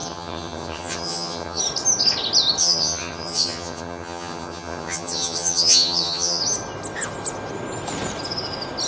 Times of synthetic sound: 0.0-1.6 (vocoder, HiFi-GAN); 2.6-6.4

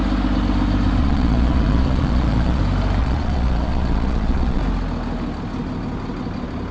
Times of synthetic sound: 1.0-2.6 (vocoder, Vocos); 3.0-4.6

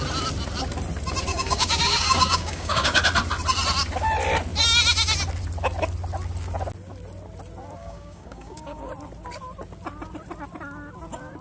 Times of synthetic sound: 1.3-3.0 (codec, DAC); 7.8-8.9

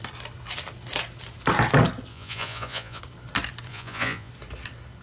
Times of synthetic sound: 2.1-3.0 (vocoder, Vocos); 3.7-4.3